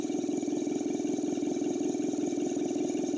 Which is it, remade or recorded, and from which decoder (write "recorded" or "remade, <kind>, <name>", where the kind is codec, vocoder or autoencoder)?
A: recorded